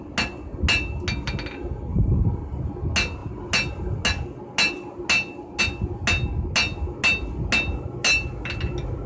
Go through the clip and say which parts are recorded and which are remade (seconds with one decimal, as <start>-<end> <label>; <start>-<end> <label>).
0.0-1.9 recorded; 1.9-2.7 remade; 2.7-9.1 recorded